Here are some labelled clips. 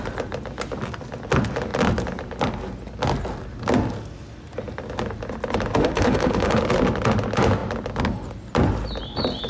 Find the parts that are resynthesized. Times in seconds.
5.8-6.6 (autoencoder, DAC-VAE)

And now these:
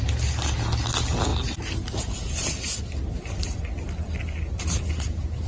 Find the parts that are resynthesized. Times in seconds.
none

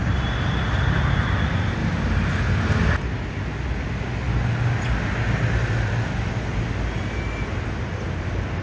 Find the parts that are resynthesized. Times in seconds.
none